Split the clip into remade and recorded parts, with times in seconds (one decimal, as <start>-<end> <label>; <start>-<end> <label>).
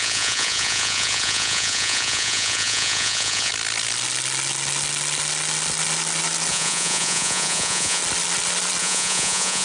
0.0-3.5 remade; 3.5-6.5 recorded; 6.5-8.0 remade; 8.0-8.8 recorded; 8.8-9.6 remade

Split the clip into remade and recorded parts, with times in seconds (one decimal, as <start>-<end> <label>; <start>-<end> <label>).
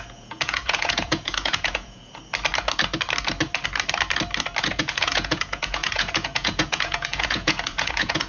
0.0-2.2 remade; 2.2-4.6 recorded; 4.6-8.3 remade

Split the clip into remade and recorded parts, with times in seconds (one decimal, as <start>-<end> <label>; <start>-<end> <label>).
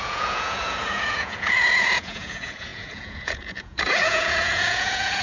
0.0-5.2 remade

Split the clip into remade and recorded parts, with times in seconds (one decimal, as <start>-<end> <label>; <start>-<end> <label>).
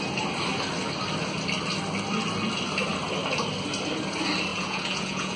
0.0-4.5 recorded; 4.5-5.4 remade